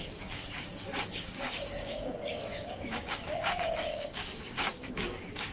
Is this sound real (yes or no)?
no